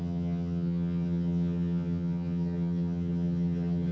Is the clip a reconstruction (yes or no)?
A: yes